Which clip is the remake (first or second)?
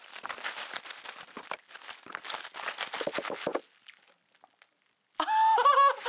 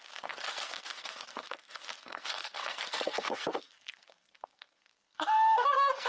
second